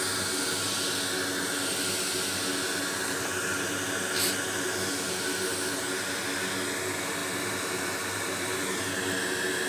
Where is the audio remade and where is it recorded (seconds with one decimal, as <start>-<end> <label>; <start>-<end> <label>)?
0.0-7.2 recorded; 7.2-8.8 remade; 8.8-9.7 recorded